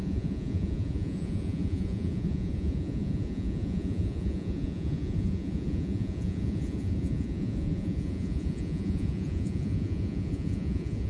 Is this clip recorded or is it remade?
remade